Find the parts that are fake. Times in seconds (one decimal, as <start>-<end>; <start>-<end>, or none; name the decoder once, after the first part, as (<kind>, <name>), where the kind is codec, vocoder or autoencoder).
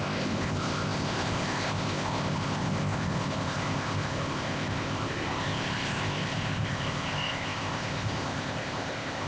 0.0-9.3 (codec, ZipCodec)